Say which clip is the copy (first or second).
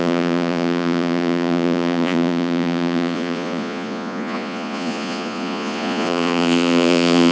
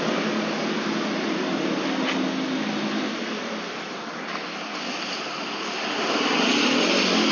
first